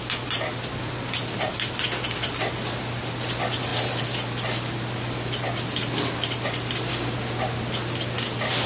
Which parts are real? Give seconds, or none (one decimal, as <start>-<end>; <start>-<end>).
0.0-8.7